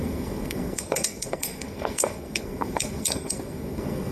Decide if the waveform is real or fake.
fake